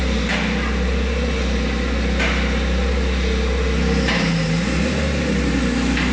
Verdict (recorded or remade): recorded